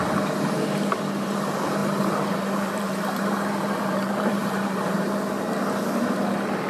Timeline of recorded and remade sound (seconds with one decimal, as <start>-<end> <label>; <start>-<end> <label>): 0.0-1.8 recorded; 1.8-4.9 remade; 4.9-6.7 recorded